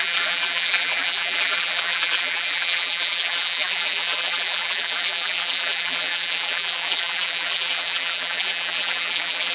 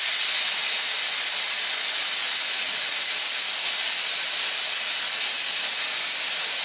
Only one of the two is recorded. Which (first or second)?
second